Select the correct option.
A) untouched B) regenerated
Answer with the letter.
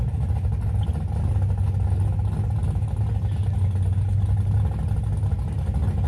A